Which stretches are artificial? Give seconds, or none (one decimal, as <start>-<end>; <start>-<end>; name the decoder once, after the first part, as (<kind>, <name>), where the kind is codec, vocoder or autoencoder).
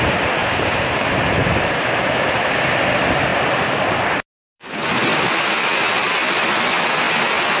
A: 0.4-2.7 (vocoder, BigVGAN v2)